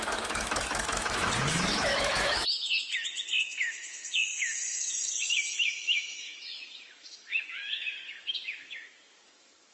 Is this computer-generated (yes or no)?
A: yes